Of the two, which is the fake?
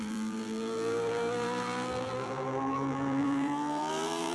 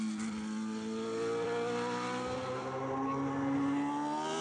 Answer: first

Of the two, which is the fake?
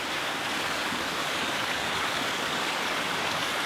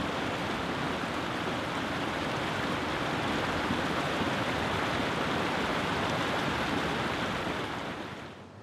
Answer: first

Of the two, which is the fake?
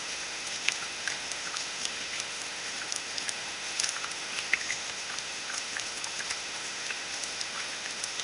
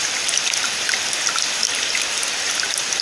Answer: first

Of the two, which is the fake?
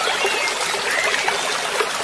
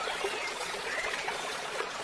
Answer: second